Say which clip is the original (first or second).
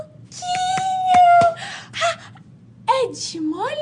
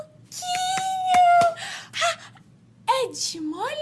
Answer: second